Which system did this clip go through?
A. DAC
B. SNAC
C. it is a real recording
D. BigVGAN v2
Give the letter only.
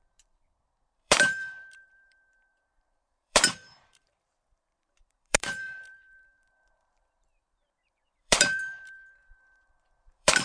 D